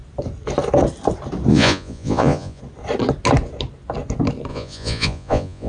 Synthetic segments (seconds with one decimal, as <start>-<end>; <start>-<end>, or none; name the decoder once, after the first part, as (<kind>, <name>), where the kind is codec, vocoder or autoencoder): 1.5-2.6 (vocoder, Vocos); 4.5-5.7